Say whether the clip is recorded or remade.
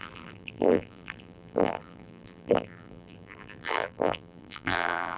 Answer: remade